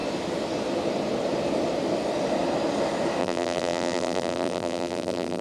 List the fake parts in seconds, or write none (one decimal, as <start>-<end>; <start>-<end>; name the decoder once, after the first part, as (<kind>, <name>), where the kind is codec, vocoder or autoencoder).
3.2-5.4 (vocoder, BigVGAN v2)